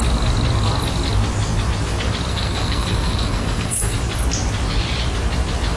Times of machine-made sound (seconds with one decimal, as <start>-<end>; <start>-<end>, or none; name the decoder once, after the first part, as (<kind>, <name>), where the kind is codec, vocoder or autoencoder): 2.3-4.0 (codec, SNAC)